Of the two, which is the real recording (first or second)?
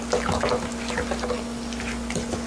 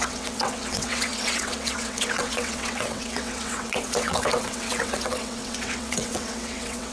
first